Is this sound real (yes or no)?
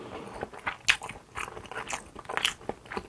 yes